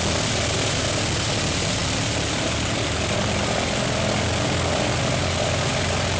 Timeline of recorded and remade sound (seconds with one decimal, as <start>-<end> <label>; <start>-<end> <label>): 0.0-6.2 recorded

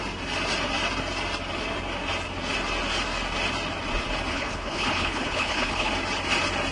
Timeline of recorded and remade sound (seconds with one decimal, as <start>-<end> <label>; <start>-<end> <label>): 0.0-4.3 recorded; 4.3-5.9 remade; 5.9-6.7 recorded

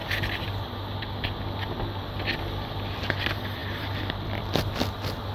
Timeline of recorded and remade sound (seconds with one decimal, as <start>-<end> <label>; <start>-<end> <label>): 0.0-5.3 recorded

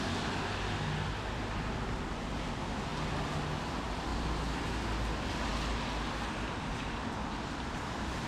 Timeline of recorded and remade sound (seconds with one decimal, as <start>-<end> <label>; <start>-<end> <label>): 0.0-8.3 recorded